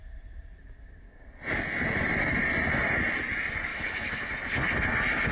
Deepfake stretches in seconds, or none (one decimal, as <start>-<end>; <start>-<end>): 3.7-4.3